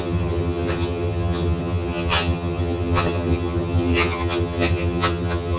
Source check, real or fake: fake